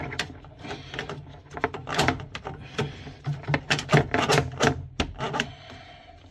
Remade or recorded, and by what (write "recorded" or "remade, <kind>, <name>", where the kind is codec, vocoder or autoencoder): recorded